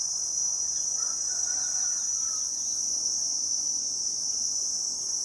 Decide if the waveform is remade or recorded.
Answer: remade